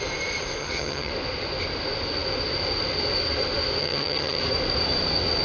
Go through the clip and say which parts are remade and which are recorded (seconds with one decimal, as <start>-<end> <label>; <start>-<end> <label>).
0.0-0.6 recorded; 0.6-1.1 remade; 1.1-3.8 recorded; 3.8-4.4 remade; 4.4-5.4 recorded